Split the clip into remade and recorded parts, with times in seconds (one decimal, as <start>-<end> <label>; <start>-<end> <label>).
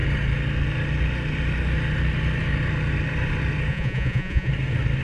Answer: 0.0-3.7 recorded; 3.7-4.5 remade; 4.5-5.0 recorded